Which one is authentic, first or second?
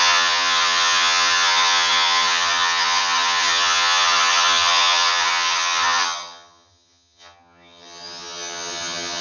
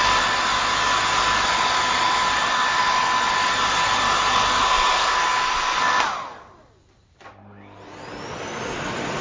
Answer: second